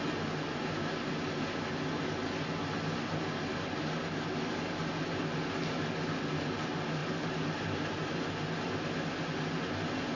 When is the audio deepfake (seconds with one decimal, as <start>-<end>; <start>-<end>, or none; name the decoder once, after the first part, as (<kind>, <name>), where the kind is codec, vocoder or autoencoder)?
none